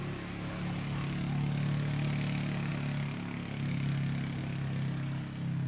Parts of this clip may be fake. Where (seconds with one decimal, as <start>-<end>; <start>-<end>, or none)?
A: none